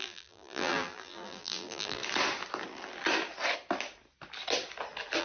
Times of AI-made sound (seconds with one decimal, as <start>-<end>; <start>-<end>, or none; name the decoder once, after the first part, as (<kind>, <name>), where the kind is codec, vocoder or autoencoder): 0.0-2.0 (vocoder, BigVGAN v2)